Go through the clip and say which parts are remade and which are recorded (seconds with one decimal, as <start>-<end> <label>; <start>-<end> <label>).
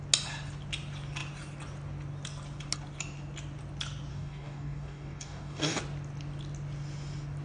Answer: 0.0-4.1 recorded; 4.1-5.8 remade; 5.8-7.4 recorded